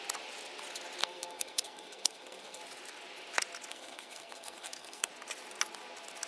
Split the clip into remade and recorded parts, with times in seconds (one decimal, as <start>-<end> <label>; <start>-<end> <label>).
0.0-1.0 recorded; 1.0-2.6 remade; 2.6-3.7 recorded; 3.7-5.1 remade; 5.1-6.3 recorded